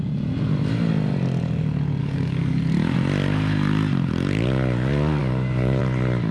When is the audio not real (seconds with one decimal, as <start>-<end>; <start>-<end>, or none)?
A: 2.0-2.6; 5.2-5.8